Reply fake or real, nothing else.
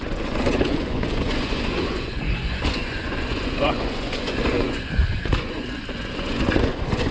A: fake